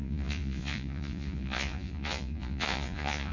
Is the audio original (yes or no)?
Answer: no